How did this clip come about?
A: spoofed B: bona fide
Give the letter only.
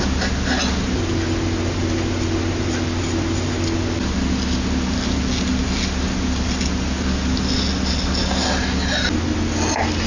B